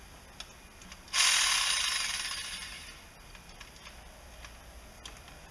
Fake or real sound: real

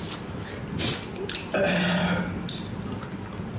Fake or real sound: real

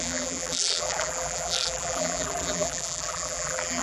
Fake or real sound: fake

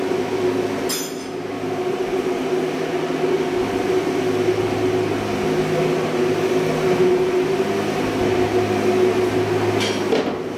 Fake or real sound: real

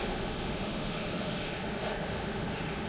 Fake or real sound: fake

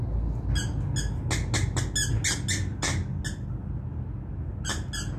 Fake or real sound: real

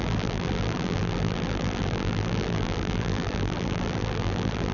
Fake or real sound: fake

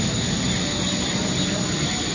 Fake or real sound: real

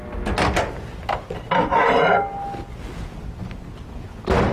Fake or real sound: real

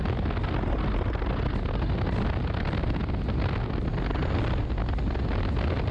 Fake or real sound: real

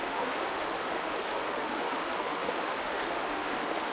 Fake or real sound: fake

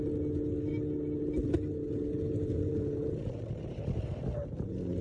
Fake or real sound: real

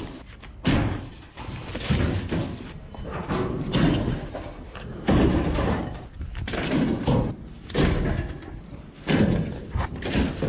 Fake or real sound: real